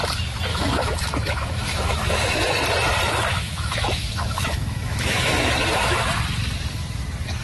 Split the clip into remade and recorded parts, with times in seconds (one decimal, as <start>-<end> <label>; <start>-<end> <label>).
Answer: 0.0-0.5 recorded; 0.5-2.5 remade; 2.5-3.3 recorded; 3.3-6.0 remade; 6.0-7.4 recorded